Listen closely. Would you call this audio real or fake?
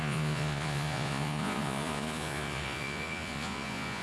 fake